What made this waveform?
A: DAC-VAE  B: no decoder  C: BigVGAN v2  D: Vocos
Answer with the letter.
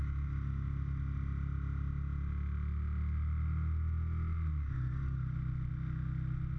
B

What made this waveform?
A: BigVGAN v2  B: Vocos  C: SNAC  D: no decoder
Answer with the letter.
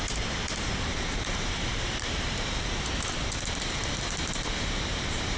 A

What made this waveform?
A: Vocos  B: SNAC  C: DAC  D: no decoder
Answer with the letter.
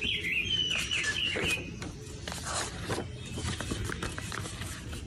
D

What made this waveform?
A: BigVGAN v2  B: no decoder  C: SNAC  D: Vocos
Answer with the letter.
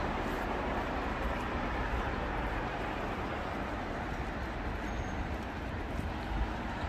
B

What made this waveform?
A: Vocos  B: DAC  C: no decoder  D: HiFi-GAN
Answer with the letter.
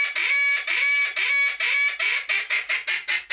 C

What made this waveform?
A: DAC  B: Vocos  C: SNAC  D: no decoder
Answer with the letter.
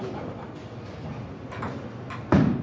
D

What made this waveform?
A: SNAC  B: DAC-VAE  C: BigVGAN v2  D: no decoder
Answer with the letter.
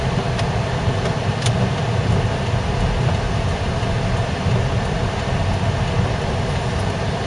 D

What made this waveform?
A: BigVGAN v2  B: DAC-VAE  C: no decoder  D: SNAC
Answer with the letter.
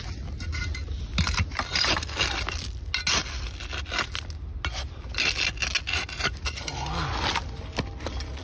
C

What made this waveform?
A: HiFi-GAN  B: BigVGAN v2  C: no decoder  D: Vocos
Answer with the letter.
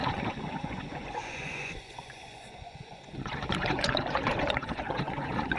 D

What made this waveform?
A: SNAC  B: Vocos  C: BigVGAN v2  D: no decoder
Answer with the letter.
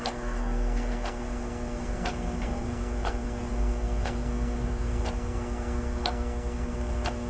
A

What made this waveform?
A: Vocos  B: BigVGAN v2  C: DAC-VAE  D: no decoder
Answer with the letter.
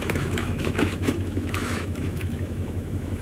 C